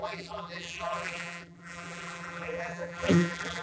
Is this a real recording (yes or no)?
no